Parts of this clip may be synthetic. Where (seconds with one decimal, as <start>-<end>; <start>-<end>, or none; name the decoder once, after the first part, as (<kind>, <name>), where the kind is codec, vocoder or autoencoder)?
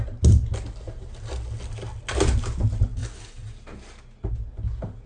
none